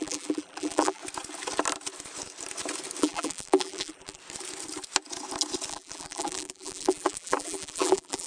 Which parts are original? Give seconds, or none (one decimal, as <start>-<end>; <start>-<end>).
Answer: 1.0-3.0; 4.2-5.7